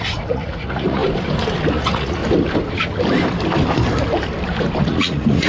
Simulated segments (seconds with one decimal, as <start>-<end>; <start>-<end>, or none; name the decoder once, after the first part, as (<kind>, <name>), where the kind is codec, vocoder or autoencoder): 0.0-1.0 (vocoder, Vocos); 1.7-2.2; 4.8-5.5